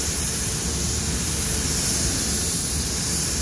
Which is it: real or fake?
real